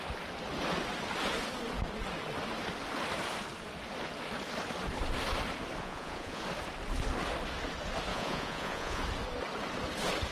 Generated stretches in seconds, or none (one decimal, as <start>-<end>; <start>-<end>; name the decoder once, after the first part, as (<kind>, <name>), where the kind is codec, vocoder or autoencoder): 5.8-6.4 (vocoder, Vocos); 8.1-9.0